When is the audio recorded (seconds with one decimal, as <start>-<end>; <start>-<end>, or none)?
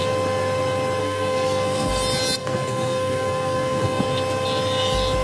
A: 0.0-1.0; 1.9-2.4; 4.0-5.2